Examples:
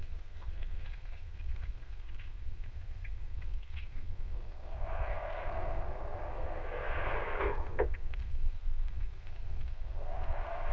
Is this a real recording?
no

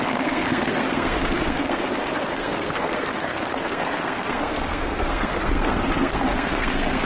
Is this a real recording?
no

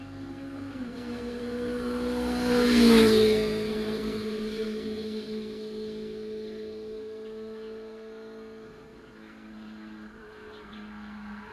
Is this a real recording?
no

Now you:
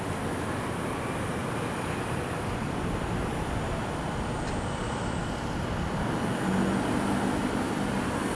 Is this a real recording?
yes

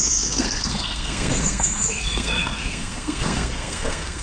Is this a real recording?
no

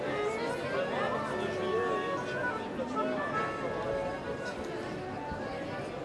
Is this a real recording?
yes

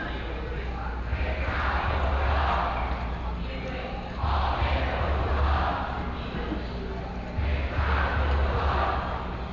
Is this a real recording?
yes